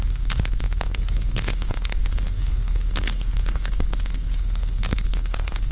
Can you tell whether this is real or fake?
fake